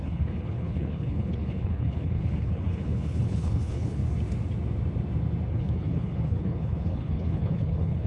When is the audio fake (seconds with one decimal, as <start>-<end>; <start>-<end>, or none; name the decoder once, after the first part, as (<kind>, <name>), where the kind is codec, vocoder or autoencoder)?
0.0-4.0 (codec, HILCodec); 5.5-8.1